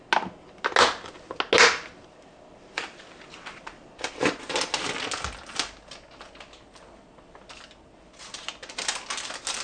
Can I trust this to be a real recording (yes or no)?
yes